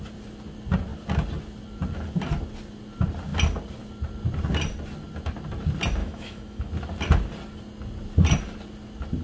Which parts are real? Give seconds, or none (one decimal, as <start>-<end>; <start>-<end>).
0.0-6.0; 6.7-9.2